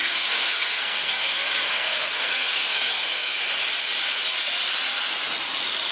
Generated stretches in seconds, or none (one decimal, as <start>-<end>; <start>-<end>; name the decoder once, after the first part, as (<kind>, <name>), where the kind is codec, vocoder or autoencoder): 0.0-3.5 (codec, SNAC)